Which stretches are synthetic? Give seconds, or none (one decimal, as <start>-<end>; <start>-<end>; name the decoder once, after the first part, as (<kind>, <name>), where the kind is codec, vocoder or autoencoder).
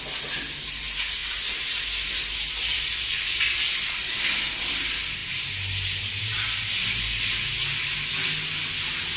none